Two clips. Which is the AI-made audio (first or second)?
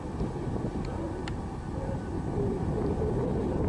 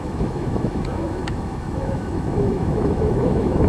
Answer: second